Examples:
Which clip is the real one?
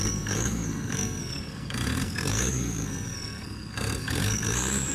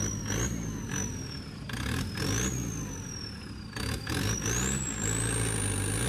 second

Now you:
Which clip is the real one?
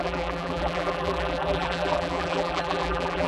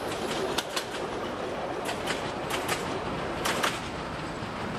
second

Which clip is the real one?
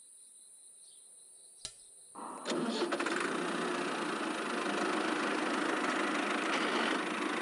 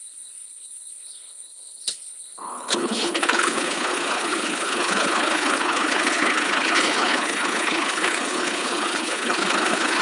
first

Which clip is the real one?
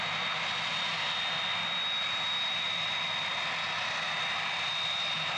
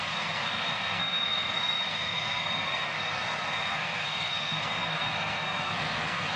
first